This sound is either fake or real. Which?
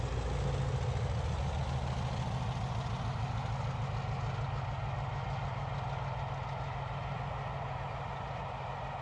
real